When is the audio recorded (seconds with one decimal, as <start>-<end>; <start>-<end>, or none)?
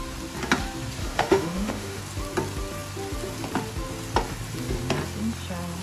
0.0-1.0; 2.0-5.8